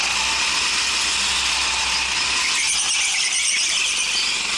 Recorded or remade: recorded